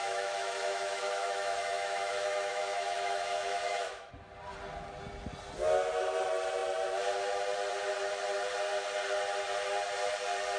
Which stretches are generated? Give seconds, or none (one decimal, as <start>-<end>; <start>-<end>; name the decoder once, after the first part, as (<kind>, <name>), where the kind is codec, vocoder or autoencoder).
0.0-4.1 (autoencoder, DAC-VAE)